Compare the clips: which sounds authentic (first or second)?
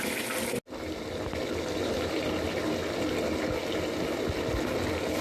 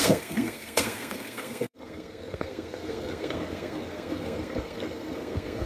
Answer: first